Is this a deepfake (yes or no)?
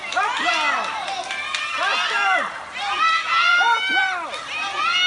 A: no